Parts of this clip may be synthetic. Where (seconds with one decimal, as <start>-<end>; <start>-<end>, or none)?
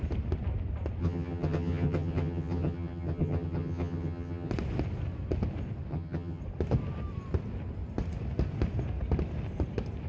1.0-4.5; 5.9-6.4